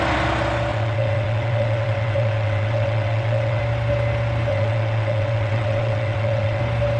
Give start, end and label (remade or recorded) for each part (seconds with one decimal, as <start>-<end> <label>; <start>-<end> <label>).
0.0-0.7 recorded; 0.7-3.6 remade; 3.6-4.5 recorded; 4.5-6.6 remade; 6.6-7.0 recorded